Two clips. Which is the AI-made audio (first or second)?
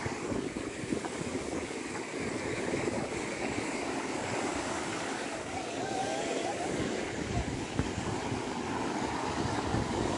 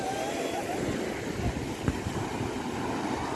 first